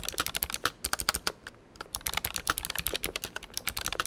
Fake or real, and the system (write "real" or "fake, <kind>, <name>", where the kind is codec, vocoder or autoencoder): real